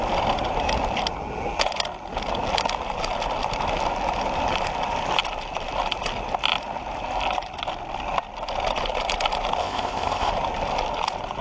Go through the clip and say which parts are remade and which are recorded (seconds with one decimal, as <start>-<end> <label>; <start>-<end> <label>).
0.0-9.6 recorded; 9.6-10.3 remade; 10.3-11.4 recorded